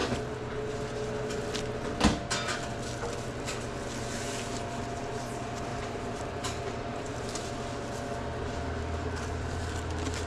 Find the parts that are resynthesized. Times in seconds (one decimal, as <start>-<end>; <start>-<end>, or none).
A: 5.7-7.5